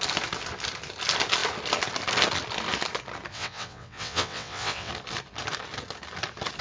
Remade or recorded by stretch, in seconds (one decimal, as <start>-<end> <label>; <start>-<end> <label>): 0.0-3.3 recorded; 3.3-4.9 remade; 4.9-6.6 recorded